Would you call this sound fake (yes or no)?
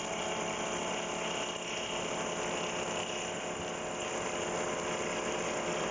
no